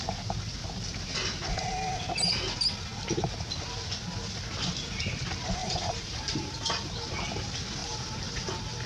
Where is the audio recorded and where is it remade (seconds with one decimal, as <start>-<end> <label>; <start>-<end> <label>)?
0.0-5.6 recorded; 5.6-6.9 remade; 6.9-7.8 recorded; 7.8-8.9 remade